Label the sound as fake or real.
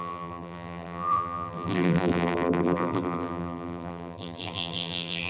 fake